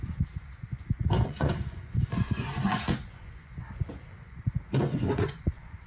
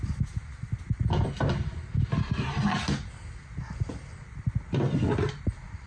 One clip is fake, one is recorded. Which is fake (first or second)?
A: first